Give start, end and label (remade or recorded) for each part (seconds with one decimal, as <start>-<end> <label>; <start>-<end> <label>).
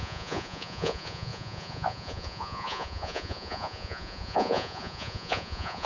0.0-5.9 remade